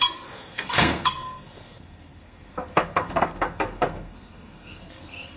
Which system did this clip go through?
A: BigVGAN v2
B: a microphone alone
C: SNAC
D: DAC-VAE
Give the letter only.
C